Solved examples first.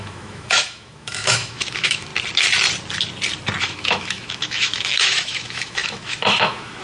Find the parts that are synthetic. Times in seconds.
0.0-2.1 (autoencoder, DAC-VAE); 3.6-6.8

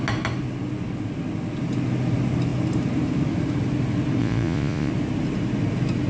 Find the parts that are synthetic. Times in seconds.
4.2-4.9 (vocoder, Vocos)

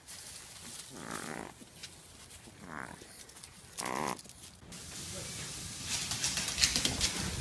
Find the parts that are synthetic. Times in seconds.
6.7-7.4 (vocoder, BigVGAN v2)

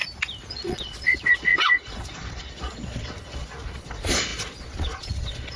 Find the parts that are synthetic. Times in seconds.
0.5-5.6 (vocoder, Vocos)

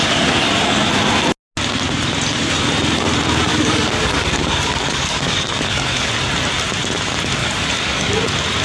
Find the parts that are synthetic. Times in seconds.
0.0-0.5 (codec, DAC); 3.5-6.1; 7.4-8.2

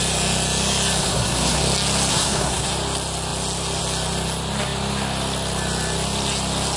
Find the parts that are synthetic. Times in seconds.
1.0-1.6 (codec, SNAC); 2.1-2.7

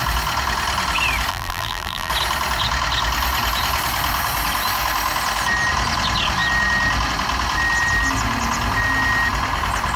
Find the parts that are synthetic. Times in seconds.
1.3-2.1 (vocoder, BigVGAN v2)